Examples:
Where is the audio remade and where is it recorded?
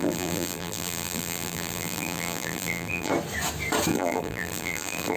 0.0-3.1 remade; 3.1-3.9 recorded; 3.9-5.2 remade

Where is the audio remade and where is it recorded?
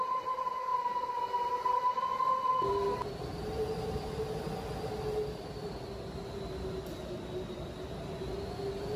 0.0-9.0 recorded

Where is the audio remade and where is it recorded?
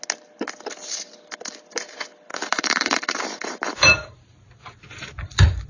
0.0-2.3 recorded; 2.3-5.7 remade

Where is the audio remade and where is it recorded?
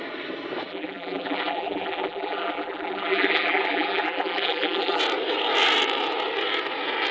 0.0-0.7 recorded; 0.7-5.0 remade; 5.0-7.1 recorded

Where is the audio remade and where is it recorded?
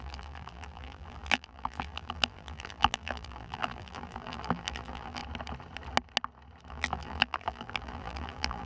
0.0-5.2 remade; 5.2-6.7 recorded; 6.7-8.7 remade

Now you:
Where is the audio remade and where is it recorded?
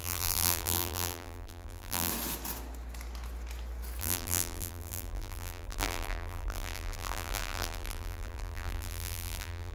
0.0-2.1 remade; 2.1-4.0 recorded; 4.0-9.7 remade